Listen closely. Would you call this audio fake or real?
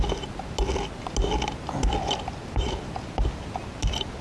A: real